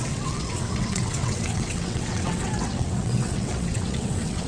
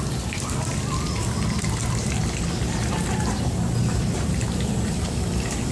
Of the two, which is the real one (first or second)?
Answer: second